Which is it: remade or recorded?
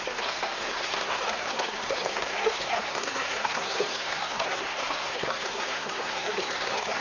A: remade